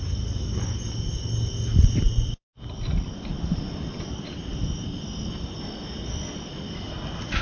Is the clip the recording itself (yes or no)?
yes